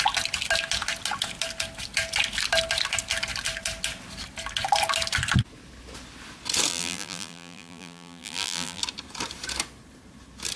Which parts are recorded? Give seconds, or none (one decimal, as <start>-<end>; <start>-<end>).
0.0-6.7; 8.8-10.6